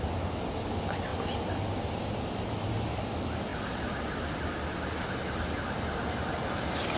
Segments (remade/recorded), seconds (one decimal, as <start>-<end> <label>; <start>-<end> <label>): 0.0-7.0 recorded